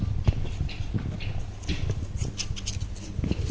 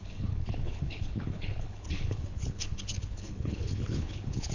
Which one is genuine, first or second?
first